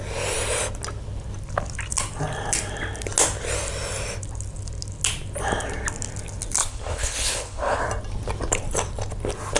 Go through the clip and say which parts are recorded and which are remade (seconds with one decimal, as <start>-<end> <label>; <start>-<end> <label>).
0.0-6.6 recorded; 6.6-7.8 remade; 7.8-9.6 recorded